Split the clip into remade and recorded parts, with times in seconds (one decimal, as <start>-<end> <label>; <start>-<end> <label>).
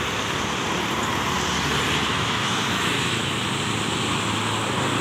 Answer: 0.0-2.1 recorded; 2.1-3.3 remade; 3.3-5.0 recorded